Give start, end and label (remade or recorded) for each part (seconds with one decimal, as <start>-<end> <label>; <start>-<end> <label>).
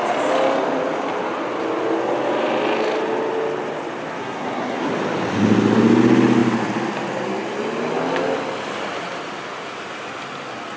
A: 0.0-4.2 recorded; 4.2-4.9 remade; 4.9-10.8 recorded